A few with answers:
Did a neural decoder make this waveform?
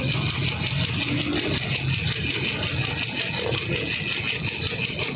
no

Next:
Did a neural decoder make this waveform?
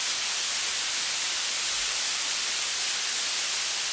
no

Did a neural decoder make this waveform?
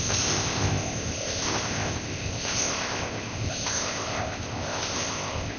yes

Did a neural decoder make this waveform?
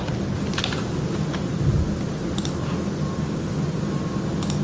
no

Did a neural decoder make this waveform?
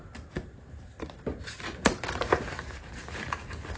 no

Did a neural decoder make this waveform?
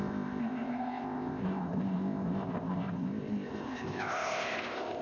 yes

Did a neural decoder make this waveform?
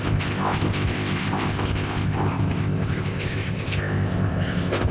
yes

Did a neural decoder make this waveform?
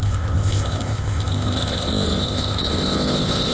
yes